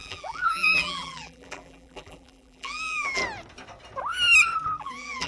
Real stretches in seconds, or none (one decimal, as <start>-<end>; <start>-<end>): 3.2-4.8